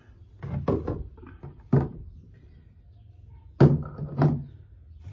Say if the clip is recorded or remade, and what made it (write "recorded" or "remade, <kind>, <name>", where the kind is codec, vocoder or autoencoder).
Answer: recorded